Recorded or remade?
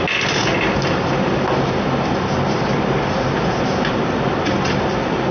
recorded